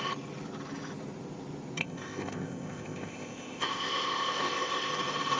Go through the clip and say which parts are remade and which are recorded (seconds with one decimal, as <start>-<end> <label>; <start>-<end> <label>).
0.0-1.8 recorded; 1.8-4.9 remade; 4.9-5.4 recorded